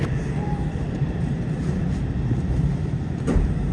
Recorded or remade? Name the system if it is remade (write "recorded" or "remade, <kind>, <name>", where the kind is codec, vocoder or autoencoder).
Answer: remade, vocoder, BigVGAN v2